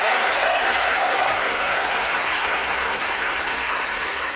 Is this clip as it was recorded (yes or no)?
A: no